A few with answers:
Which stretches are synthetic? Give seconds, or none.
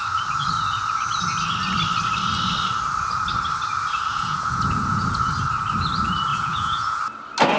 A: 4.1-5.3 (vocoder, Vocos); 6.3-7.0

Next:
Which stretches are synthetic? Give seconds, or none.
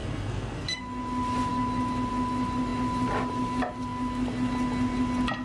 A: 0.0-0.8 (codec, SNAC)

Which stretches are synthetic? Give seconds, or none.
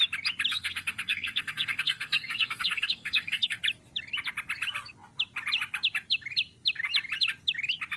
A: 0.5-3.6 (codec, SNAC)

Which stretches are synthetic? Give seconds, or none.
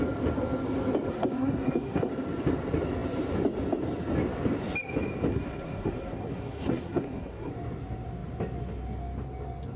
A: 1.1-2.1 (codec, SNAC); 5.3-7.5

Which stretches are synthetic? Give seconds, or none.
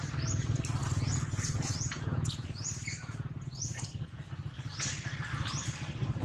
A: 0.8-4.2 (vocoder, Vocos)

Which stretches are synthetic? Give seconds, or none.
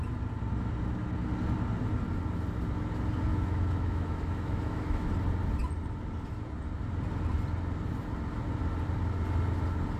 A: 3.3-5.1 (autoencoder, DAC-VAE)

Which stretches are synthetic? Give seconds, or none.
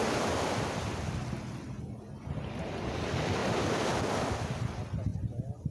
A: 5.1-5.7 (vocoder, BigVGAN v2)